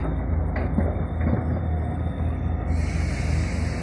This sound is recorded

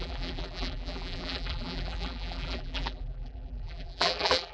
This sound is remade